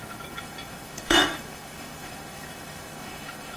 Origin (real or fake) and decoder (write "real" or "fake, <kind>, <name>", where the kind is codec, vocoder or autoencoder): fake, autoencoder, DAC-VAE